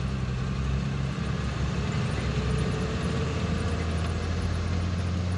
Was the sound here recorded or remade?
recorded